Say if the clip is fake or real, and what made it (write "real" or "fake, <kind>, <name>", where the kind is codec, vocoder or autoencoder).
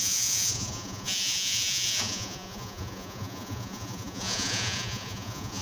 fake, vocoder, Vocos